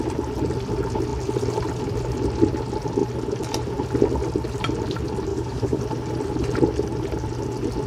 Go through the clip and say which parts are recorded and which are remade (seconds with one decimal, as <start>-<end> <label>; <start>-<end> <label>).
0.0-5.3 recorded; 5.3-5.8 remade; 5.8-7.9 recorded